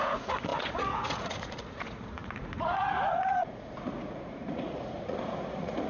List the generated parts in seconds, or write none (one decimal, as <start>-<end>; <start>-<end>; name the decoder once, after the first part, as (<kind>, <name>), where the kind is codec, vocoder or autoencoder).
0.0-5.9 (vocoder, Vocos)